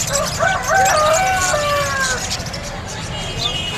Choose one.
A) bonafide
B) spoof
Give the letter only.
A